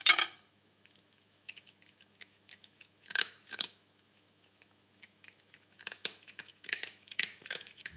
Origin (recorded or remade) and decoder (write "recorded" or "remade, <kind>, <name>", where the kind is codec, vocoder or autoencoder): remade, autoencoder, DAC-VAE